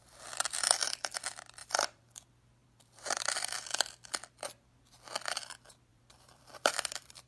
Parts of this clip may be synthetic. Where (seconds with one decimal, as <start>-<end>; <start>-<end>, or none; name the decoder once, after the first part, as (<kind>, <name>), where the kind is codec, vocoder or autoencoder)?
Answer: 0.0-0.6 (vocoder, BigVGAN v2); 1.6-2.1; 2.6-3.5; 5.9-7.3